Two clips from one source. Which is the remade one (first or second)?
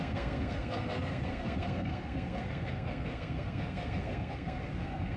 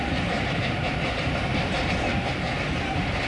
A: first